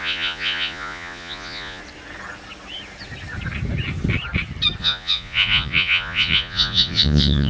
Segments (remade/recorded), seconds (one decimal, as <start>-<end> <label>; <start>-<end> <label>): 0.0-1.8 remade; 1.8-4.8 recorded; 4.8-7.5 remade